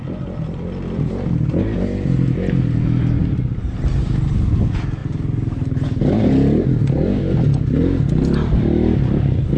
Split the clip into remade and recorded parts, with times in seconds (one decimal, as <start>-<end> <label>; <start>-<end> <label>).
0.0-9.6 recorded

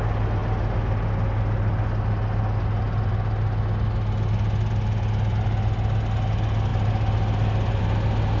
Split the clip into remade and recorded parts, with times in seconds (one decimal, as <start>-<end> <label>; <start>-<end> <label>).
0.0-8.4 recorded

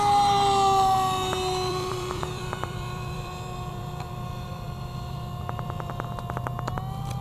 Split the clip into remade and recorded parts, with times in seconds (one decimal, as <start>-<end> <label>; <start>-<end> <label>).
0.0-1.7 recorded; 1.7-5.9 remade; 5.9-7.2 recorded

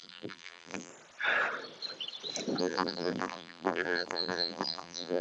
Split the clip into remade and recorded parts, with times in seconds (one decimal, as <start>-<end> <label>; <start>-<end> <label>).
0.0-0.9 remade; 0.9-2.6 recorded; 2.6-5.2 remade

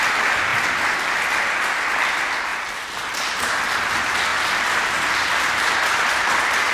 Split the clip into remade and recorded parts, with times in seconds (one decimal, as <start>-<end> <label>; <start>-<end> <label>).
0.0-2.5 recorded; 2.5-3.8 remade; 3.8-4.3 recorded; 4.3-6.3 remade; 6.3-6.7 recorded